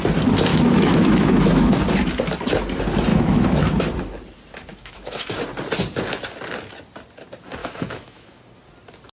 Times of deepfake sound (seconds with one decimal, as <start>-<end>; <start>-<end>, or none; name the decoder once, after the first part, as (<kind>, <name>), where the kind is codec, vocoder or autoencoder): 0.5-1.8 (autoencoder, DAC-VAE); 3.1-3.6; 4.7-5.4; 7.6-8.4